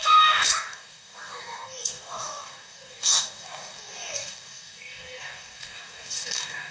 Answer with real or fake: fake